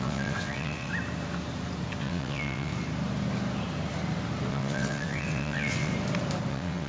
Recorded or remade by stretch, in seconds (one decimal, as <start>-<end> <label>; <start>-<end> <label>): 0.0-0.9 remade; 0.9-2.0 recorded; 2.0-2.7 remade; 2.7-4.5 recorded; 4.5-5.9 remade; 5.9-6.5 recorded; 6.5-6.9 remade